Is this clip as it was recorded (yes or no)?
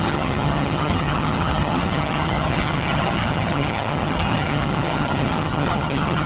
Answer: no